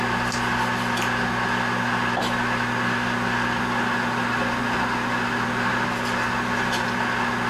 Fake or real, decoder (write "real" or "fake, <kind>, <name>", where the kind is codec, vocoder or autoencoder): real